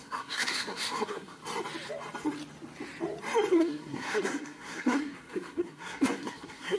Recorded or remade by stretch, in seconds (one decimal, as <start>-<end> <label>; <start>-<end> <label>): 0.0-1.4 remade; 1.4-3.5 recorded; 3.5-6.8 remade